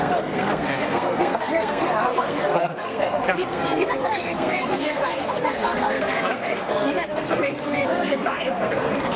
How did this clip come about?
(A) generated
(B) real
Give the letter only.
A